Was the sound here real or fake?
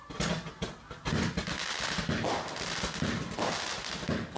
real